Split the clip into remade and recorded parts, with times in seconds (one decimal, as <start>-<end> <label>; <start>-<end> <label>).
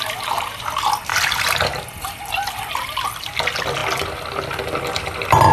0.0-5.5 recorded